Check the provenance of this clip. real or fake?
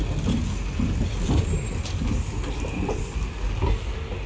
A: real